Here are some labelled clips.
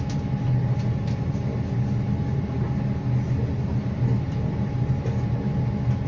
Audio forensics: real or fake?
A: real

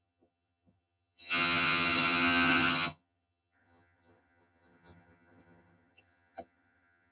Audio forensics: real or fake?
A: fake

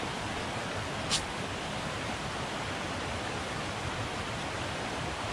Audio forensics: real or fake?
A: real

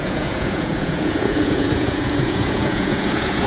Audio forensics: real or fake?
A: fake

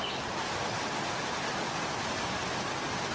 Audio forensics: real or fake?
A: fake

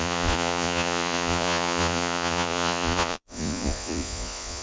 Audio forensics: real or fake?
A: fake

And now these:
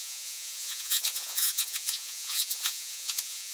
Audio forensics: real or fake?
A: fake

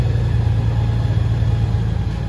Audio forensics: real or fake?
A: real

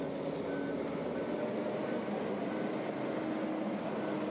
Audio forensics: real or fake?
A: real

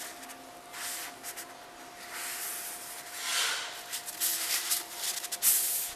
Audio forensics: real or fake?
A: real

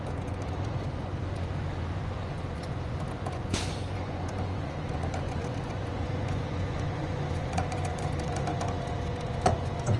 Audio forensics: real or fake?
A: fake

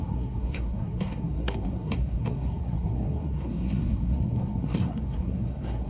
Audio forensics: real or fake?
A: fake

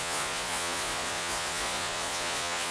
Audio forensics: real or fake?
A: fake